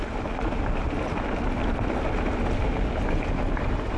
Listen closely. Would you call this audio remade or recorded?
recorded